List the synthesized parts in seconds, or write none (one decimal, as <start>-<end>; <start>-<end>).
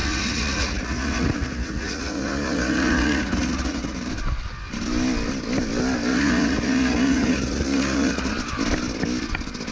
0.0-4.1; 6.1-8.3